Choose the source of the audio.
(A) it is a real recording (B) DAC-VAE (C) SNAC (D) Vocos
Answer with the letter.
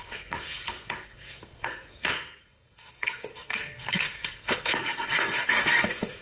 C